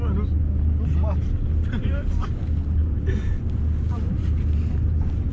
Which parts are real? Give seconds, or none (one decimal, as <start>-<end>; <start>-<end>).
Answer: 0.0-2.8; 3.4-3.9